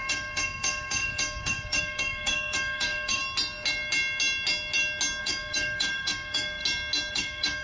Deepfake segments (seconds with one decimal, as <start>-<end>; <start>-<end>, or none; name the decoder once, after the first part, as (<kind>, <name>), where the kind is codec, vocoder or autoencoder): 0.0-3.2 (codec, DAC); 5.2-6.6; 7.1-7.6